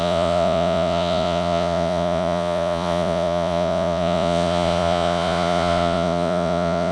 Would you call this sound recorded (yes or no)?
no